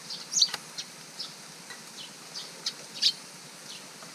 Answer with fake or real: real